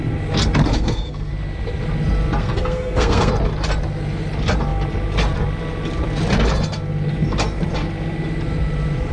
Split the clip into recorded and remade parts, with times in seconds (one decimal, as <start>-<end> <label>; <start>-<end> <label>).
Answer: 0.0-0.7 recorded; 0.7-1.3 remade; 1.3-2.4 recorded; 2.4-3.3 remade; 3.3-9.1 recorded